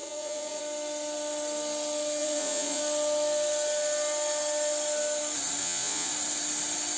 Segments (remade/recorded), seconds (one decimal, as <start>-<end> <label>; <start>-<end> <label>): 0.0-0.6 remade; 0.6-2.2 recorded; 2.2-2.8 remade; 2.8-5.6 recorded; 5.6-6.1 remade; 6.1-7.0 recorded